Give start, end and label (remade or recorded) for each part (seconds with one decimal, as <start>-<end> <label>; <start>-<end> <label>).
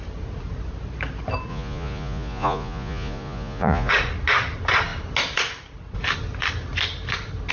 0.0-1.5 recorded; 1.5-3.9 remade; 3.9-7.5 recorded